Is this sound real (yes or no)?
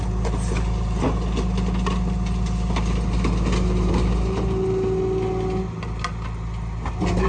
yes